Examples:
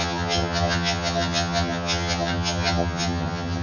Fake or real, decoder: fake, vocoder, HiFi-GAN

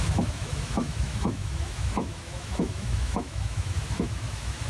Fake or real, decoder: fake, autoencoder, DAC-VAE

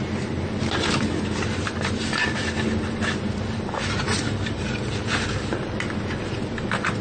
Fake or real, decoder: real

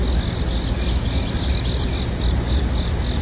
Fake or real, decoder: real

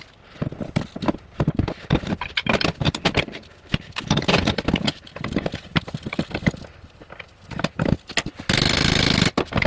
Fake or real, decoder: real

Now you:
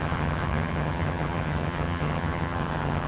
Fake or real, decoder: fake, vocoder, HiFi-GAN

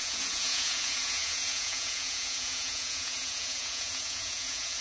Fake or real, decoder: fake, vocoder, Vocos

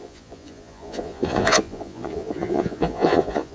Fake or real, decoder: fake, vocoder, Vocos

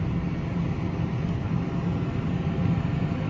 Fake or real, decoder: real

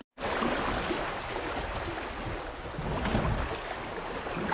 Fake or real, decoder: real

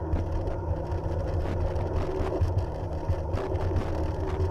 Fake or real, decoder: real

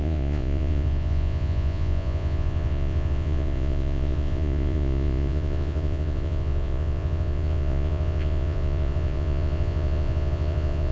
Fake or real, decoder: fake, vocoder, Vocos